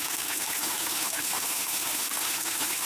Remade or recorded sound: remade